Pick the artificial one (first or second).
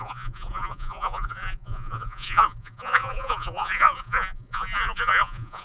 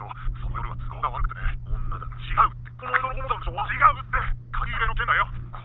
first